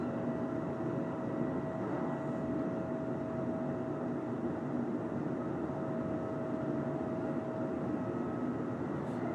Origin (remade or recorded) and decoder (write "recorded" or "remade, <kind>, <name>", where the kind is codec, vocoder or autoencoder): recorded